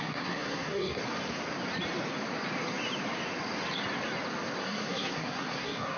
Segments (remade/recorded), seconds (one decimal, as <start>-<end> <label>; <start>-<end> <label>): 0.0-1.0 remade; 1.0-4.6 recorded; 4.6-6.0 remade